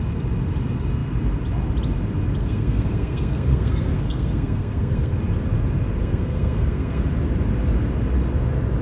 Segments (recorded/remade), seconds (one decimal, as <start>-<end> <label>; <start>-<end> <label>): 0.0-2.4 recorded; 2.4-5.2 remade; 5.2-6.0 recorded; 6.0-7.0 remade; 7.0-8.8 recorded